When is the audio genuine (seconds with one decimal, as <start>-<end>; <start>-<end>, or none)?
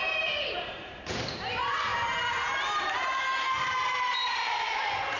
none